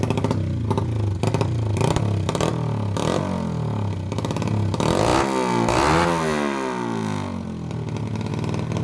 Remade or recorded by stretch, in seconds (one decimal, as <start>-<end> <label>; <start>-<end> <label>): 0.0-8.8 recorded